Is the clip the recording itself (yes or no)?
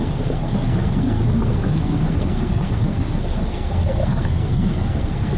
no